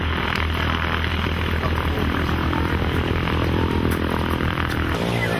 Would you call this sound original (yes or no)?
no